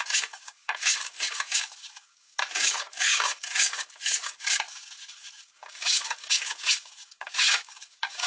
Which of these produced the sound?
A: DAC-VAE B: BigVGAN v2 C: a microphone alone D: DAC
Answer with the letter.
D